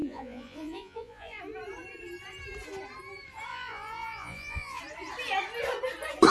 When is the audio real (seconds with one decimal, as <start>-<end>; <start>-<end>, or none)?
1.4-3.5; 4.8-6.3